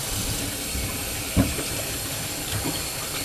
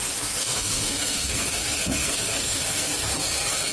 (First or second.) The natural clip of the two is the first